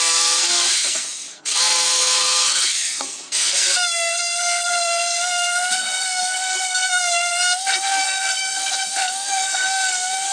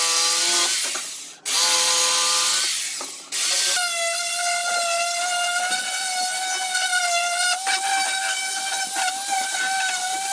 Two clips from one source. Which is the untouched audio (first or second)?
second